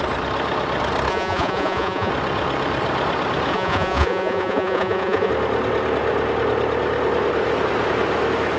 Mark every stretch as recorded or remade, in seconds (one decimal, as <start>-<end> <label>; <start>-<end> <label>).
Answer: 0.0-1.1 recorded; 1.1-2.1 remade; 2.1-3.5 recorded; 3.5-5.3 remade; 5.3-8.6 recorded